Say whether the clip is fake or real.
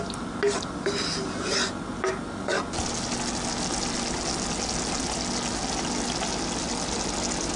real